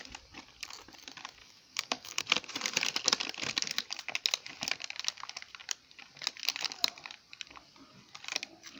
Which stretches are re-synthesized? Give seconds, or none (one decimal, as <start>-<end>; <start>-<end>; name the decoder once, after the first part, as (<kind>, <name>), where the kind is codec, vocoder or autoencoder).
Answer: 1.4-2.2 (codec, DAC)